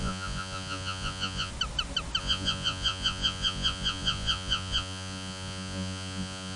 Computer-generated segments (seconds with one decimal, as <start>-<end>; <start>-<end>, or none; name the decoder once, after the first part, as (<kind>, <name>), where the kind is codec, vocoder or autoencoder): 0.0-1.5 (vocoder, Vocos); 2.2-6.6